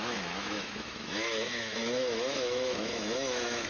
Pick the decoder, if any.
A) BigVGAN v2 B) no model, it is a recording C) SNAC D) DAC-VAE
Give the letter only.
D